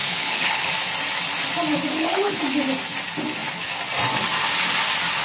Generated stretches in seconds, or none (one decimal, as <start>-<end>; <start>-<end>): 0.0-0.7; 1.9-2.4